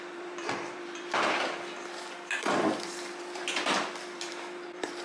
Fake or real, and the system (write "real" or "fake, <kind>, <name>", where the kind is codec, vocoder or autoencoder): fake, vocoder, BigVGAN v2